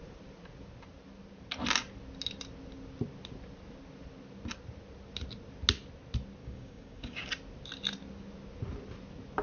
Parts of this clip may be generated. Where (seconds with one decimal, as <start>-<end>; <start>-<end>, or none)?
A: 6.4-7.3